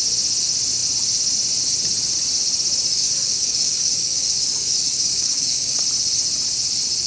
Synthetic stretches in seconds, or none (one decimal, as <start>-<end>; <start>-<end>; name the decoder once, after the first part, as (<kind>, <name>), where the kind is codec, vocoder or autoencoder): 2.9-5.8 (codec, DAC)